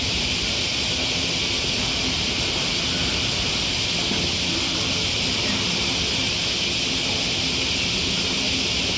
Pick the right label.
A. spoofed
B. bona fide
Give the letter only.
B